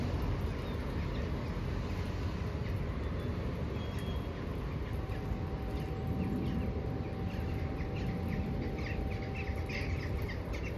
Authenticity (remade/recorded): recorded